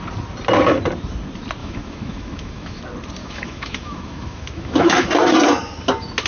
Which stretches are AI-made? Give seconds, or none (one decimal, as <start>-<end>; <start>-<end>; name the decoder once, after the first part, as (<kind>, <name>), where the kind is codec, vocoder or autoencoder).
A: 1.6-2.8 (autoencoder, DAC-VAE); 3.2-5.1

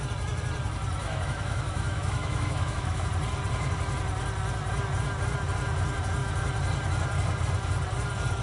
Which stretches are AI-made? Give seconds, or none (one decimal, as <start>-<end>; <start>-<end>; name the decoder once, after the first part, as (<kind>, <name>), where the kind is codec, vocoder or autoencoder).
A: 1.0-3.1 (autoencoder, DAC-VAE)

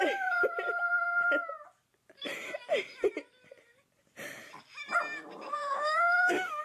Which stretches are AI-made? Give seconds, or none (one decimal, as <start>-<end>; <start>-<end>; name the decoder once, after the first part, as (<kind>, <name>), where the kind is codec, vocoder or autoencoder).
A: 5.5-6.6 (autoencoder, DAC-VAE)

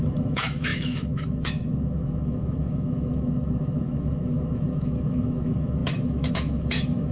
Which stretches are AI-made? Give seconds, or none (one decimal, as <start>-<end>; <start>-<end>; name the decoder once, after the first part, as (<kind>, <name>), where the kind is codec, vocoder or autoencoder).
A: 0.0-7.1 (autoencoder, DAC-VAE)